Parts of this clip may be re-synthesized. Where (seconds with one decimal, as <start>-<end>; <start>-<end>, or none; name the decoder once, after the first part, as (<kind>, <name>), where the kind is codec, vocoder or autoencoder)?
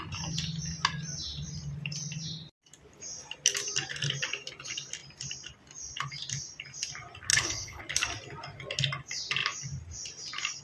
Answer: 7.3-7.8 (codec, HILCodec)